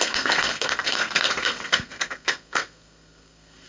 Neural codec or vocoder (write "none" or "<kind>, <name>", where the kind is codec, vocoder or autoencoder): codec, SNAC